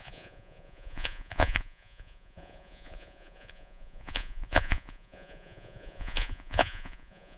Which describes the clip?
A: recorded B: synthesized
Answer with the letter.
B